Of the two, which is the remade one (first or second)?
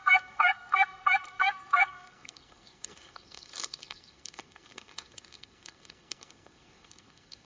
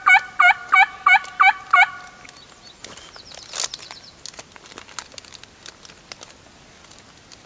first